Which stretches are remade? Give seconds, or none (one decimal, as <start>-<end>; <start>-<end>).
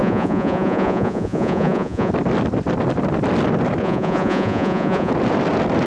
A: 0.0-2.1; 3.8-5.1